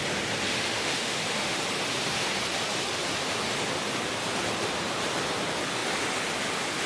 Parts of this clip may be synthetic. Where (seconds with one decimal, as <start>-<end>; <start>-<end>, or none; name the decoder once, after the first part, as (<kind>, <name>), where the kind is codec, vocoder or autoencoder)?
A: 0.5-1.6 (autoencoder, DAC-VAE)